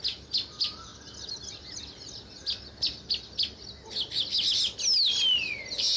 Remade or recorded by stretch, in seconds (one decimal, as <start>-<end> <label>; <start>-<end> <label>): 0.0-6.0 recorded